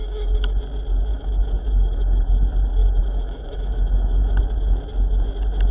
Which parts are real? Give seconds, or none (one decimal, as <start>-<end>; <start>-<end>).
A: 0.6-1.1; 2.3-2.8; 4.4-5.7